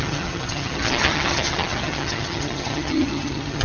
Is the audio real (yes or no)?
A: no